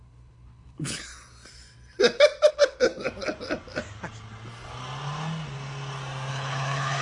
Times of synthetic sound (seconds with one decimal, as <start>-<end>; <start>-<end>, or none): 0.0-1.1; 2.5-2.9; 6.3-7.0